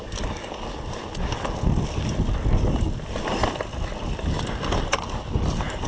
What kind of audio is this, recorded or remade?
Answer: recorded